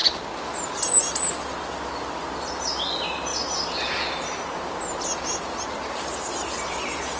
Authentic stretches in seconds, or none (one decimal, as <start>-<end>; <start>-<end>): 0.0-7.2